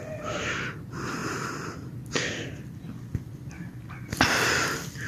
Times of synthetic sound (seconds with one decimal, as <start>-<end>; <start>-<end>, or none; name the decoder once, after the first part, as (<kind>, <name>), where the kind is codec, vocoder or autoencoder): none